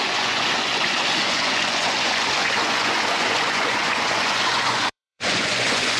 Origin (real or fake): fake